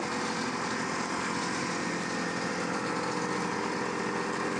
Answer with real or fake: real